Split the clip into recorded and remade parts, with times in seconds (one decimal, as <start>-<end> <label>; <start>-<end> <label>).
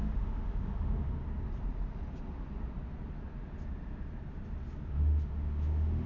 0.0-1.2 remade; 1.2-4.9 recorded; 4.9-6.1 remade